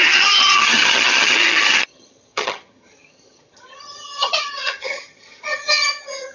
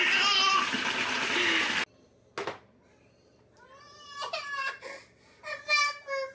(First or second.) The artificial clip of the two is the first